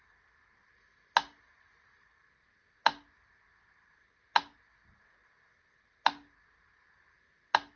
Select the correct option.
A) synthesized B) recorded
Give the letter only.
B